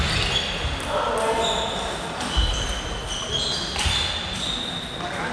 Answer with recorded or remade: recorded